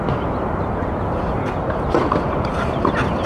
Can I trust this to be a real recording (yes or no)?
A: yes